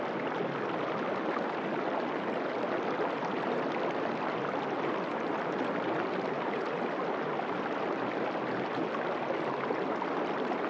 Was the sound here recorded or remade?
recorded